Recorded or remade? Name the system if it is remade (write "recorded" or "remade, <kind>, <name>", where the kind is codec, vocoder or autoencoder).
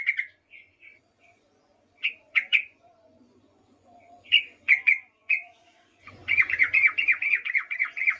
remade, vocoder, Vocos